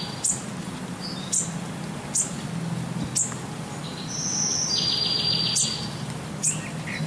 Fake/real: real